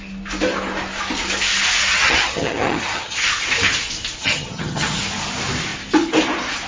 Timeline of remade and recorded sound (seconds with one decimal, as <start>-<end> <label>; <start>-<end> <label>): 0.0-1.8 recorded; 1.8-3.3 remade; 3.3-4.2 recorded; 4.2-5.0 remade; 5.0-6.7 recorded

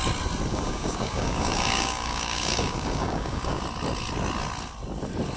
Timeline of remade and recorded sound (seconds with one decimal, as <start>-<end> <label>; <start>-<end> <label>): 0.0-0.5 recorded; 0.5-3.6 remade; 3.6-5.4 recorded

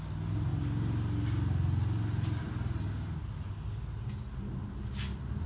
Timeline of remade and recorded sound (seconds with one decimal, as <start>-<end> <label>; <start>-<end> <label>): 0.0-5.5 recorded

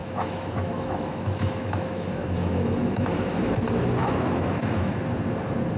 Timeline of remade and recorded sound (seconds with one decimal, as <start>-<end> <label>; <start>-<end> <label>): 0.0-3.5 remade; 3.5-4.0 recorded; 4.0-5.0 remade; 5.0-5.8 recorded

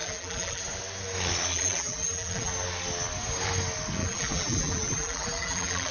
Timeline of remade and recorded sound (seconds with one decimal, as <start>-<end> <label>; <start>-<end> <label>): 0.0-0.6 remade; 0.6-1.5 recorded; 1.5-2.5 remade; 2.5-4.0 recorded; 4.0-5.9 remade

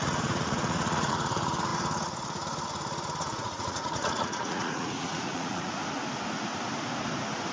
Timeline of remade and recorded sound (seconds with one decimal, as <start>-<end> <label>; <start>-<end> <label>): 0.0-5.8 remade; 5.8-7.5 recorded